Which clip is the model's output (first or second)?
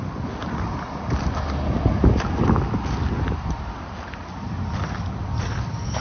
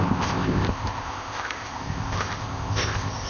second